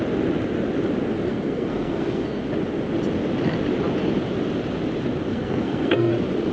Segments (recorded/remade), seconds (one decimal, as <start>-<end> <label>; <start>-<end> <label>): 0.0-1.3 recorded; 1.3-2.4 remade; 2.4-5.3 recorded; 5.3-6.1 remade; 6.1-6.5 recorded